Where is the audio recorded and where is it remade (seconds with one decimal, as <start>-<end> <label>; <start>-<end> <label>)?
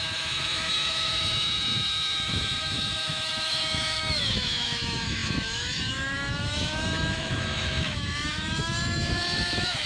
0.0-9.9 remade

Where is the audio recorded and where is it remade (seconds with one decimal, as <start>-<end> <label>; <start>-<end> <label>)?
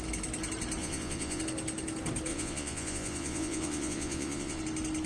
0.0-0.8 recorded; 0.8-1.4 remade; 1.4-2.3 recorded; 2.3-4.6 remade; 4.6-5.1 recorded